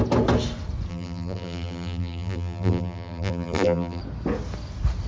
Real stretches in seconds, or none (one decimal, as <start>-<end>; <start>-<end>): 0.0-0.9; 4.0-5.1